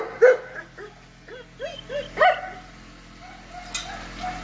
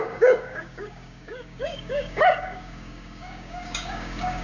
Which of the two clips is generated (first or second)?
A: second